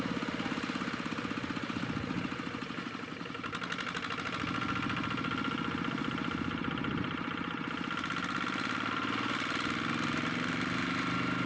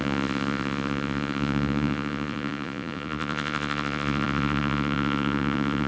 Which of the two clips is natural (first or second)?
first